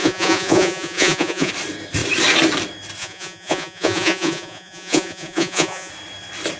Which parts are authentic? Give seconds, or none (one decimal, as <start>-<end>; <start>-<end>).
1.5-3.0; 5.9-6.6